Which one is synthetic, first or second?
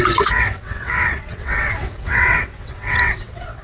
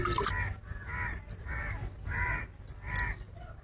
first